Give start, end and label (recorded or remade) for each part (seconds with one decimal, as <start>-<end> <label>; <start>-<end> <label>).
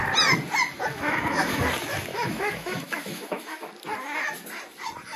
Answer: 0.0-0.9 recorded; 0.9-1.6 remade; 1.6-2.1 recorded; 2.1-3.7 remade; 3.7-5.2 recorded